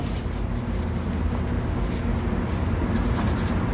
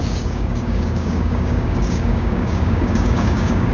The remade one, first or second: second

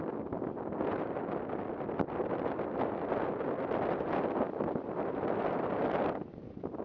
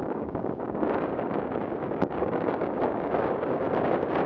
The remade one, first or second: second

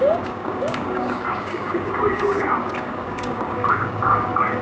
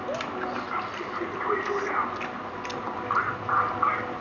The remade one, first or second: first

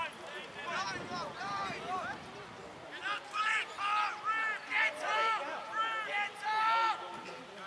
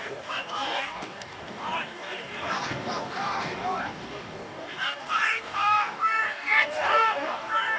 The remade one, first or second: second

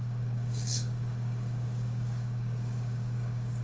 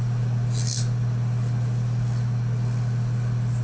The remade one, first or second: first